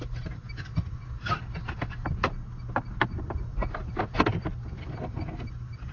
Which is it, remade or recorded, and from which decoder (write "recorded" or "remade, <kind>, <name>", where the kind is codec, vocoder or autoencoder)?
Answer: recorded